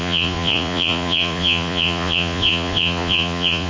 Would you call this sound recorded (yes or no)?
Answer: no